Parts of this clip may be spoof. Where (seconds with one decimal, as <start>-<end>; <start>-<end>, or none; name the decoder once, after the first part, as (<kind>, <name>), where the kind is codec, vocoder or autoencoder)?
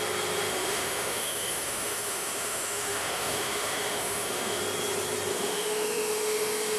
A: 0.5-4.6 (autoencoder, DAC-VAE); 5.3-6.8